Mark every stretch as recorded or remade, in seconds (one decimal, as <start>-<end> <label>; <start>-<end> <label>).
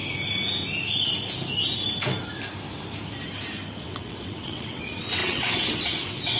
0.0-3.8 recorded; 3.8-6.4 remade